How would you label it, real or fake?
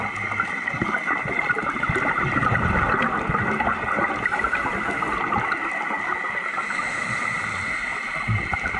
real